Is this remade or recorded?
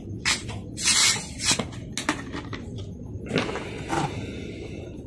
recorded